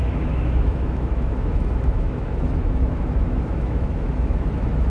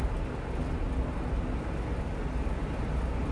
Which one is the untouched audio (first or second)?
second